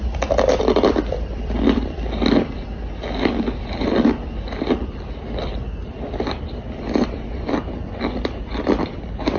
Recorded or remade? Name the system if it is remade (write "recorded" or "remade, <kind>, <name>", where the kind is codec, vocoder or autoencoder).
remade, vocoder, BigVGAN v2